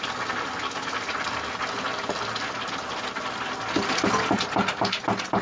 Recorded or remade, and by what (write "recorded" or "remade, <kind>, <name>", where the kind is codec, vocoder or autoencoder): recorded